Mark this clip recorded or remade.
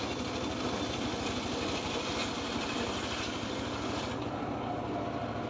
recorded